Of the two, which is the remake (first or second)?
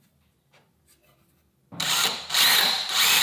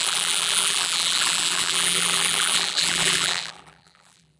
second